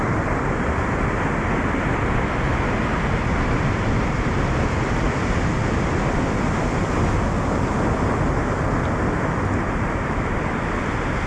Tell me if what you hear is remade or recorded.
recorded